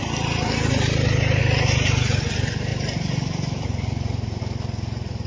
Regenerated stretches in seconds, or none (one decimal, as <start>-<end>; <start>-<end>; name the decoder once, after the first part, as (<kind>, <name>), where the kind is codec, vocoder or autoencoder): none